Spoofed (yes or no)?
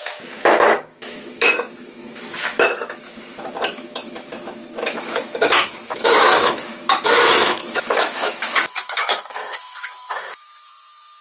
yes